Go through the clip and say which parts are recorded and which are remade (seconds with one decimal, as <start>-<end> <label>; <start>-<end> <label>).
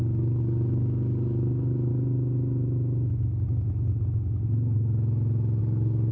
0.0-1.9 remade; 1.9-5.6 recorded; 5.6-6.1 remade